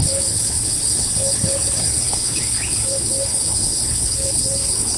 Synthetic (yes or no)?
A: yes